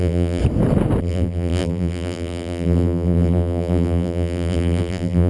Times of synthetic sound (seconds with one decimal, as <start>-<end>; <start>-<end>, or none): 0.0-0.4; 1.0-5.3

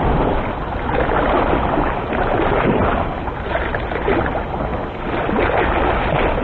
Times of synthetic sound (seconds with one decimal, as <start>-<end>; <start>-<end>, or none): none

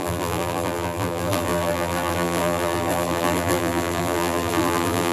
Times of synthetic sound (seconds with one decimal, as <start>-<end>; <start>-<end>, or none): 0.0-5.1

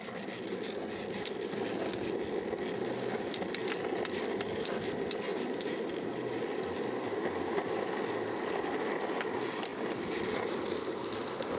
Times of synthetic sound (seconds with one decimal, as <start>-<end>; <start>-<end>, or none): 5.3-6.4